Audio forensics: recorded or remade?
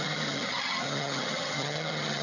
remade